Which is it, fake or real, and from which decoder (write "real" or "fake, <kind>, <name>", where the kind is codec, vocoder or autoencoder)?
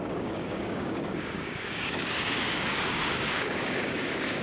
fake, codec, DAC